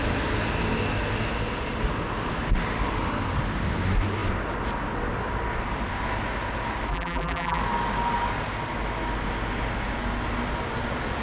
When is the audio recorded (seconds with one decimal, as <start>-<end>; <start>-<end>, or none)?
0.0-6.9; 7.6-11.2